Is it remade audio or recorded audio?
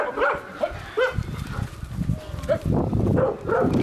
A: recorded